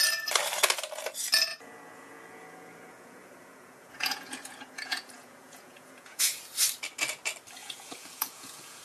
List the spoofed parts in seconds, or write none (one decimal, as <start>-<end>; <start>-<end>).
1.5-6.4; 7.6-8.8